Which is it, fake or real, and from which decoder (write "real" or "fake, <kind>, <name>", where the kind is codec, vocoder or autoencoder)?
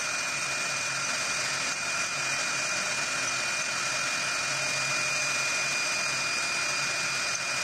real